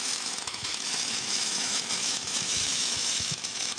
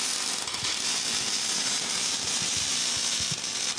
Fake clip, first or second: first